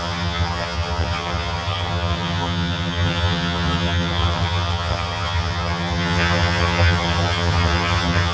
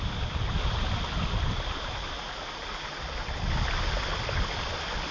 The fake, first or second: first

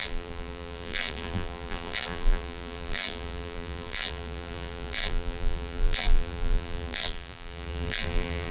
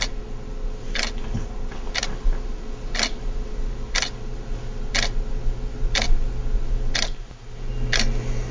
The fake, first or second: first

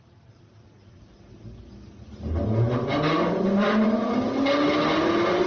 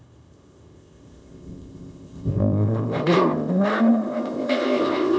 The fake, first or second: second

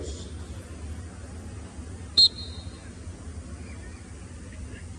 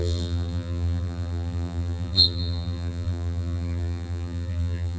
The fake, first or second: second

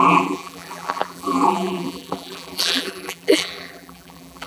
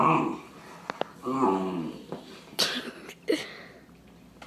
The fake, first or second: first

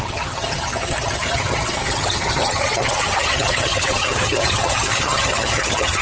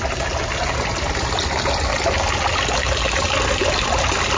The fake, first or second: first